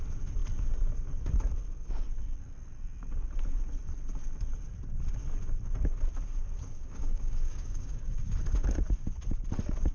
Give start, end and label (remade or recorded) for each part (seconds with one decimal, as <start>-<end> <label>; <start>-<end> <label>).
0.0-6.7 recorded; 6.7-8.1 remade; 8.1-9.9 recorded